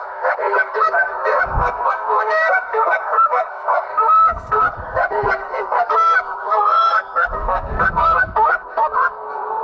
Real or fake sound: fake